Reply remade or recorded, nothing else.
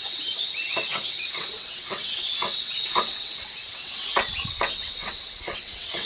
remade